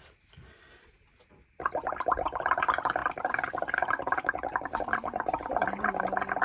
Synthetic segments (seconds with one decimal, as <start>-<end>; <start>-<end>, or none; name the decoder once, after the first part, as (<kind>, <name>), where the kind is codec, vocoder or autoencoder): 3.0-6.0 (vocoder, BigVGAN v2)